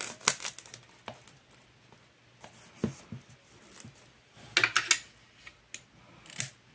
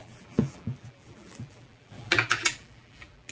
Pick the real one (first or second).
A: first